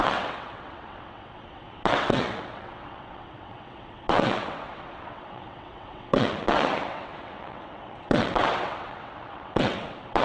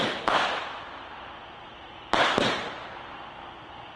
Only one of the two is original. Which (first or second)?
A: second